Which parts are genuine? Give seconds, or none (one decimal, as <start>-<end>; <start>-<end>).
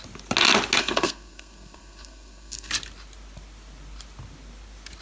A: 0.0-0.8; 2.7-5.0